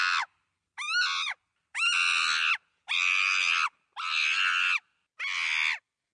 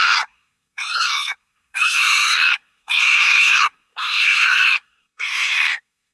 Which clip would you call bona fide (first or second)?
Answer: first